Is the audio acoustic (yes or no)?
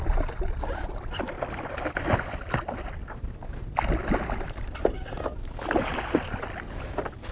yes